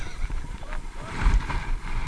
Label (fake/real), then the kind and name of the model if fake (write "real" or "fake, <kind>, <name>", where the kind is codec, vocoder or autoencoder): fake, vocoder, BigVGAN v2